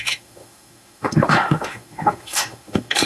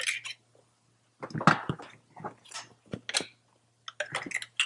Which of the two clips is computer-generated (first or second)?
first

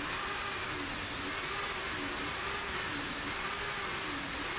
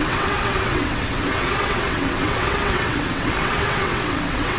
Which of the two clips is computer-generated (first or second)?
second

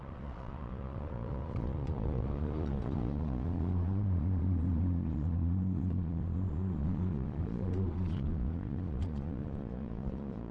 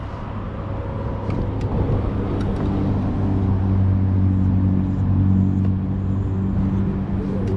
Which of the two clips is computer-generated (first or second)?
first